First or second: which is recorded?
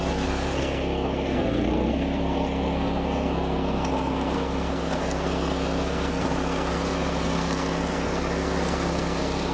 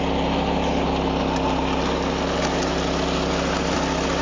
second